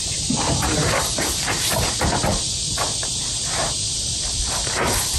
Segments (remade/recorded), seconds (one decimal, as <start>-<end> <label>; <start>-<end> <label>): 0.0-2.0 remade; 2.0-3.0 recorded; 3.0-4.1 remade; 4.1-5.2 recorded